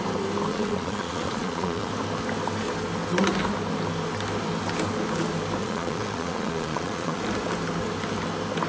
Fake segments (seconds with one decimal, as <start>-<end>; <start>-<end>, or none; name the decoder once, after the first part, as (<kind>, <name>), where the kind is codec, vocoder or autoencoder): 0.5-1.9 (vocoder, Vocos); 5.6-7.2